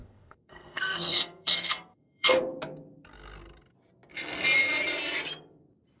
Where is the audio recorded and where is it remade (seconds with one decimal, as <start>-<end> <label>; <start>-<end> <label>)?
0.0-2.4 remade; 2.4-6.0 recorded